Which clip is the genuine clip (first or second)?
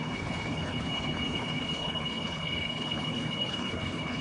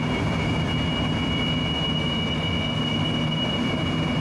second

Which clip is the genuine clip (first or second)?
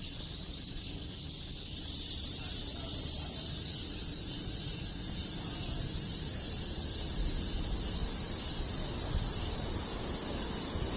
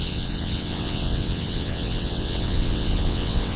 first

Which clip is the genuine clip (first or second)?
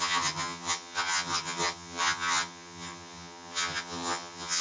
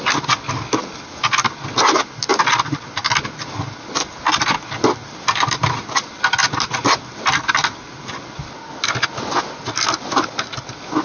second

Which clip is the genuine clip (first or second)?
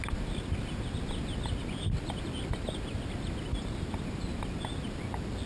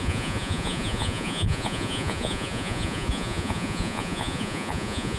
first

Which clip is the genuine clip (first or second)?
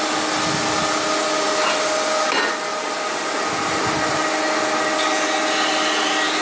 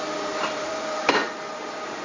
first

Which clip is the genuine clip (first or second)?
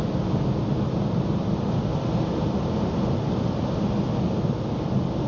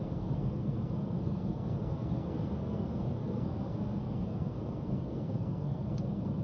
first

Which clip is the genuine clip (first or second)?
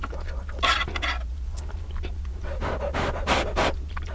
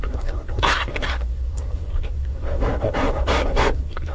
first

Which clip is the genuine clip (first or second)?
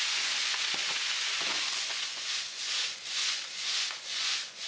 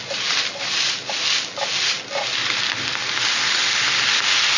second